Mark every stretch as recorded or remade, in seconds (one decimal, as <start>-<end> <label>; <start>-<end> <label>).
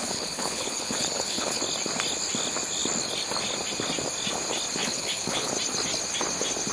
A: 0.0-1.6 remade; 1.6-4.8 recorded; 4.8-5.5 remade; 5.5-6.7 recorded